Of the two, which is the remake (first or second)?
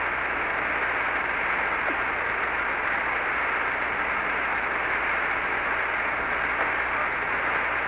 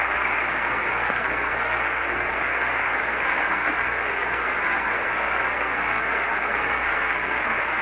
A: second